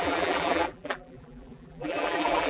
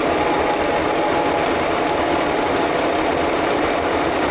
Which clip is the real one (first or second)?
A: second